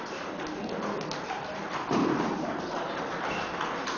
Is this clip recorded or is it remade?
remade